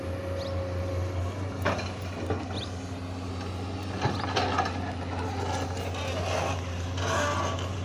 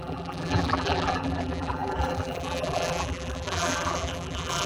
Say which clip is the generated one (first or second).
second